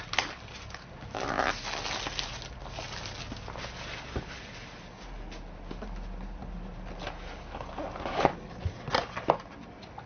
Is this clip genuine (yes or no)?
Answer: yes